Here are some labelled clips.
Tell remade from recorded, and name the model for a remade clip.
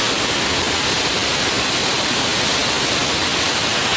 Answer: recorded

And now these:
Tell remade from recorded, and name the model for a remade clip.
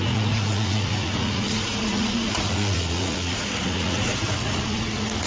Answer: remade, vocoder, Vocos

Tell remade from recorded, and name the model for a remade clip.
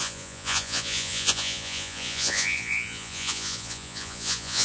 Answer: remade, vocoder, Vocos